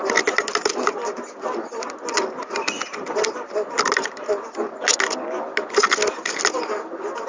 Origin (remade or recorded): recorded